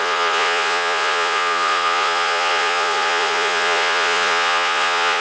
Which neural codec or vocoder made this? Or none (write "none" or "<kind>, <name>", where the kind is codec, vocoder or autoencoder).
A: vocoder, Vocos